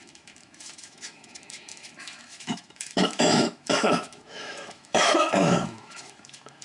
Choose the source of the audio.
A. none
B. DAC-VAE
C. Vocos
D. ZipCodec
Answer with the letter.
B